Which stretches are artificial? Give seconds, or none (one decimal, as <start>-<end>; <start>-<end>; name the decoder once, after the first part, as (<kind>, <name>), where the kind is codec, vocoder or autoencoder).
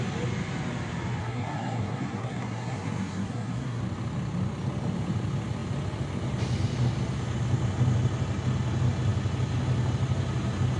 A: 1.2-3.8 (codec, SNAC)